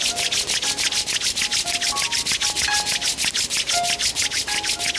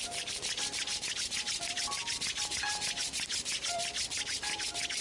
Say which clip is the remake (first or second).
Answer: second